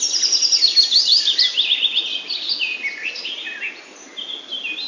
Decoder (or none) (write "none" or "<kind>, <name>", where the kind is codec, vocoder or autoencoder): none